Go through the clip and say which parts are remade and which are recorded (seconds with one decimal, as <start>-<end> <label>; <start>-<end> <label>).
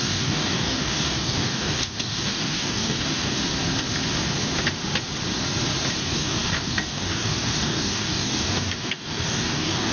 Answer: 0.0-3.4 remade; 3.4-6.0 recorded; 6.0-9.9 remade